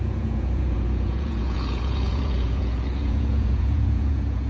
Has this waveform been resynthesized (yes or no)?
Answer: yes